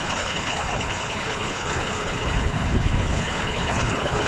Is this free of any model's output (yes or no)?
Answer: no